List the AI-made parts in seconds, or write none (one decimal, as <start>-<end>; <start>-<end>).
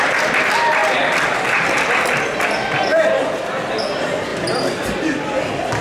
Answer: 0.8-3.2; 4.3-5.8